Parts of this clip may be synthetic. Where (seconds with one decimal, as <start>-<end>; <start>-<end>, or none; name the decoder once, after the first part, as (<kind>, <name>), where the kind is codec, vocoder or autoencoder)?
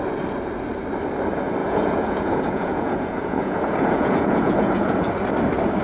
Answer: 1.6-5.1 (vocoder, Vocos)